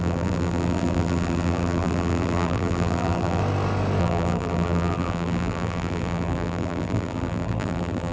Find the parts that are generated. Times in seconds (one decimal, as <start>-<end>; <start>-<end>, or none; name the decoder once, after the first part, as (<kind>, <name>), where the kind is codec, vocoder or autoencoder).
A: 0.0-3.4 (vocoder, BigVGAN v2); 4.0-8.1